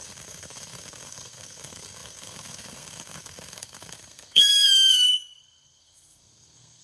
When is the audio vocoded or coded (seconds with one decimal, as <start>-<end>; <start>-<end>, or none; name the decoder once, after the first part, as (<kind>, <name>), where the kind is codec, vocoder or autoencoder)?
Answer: 0.0-6.8 (codec, SNAC)